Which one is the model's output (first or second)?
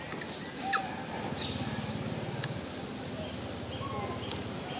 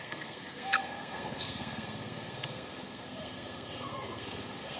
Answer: second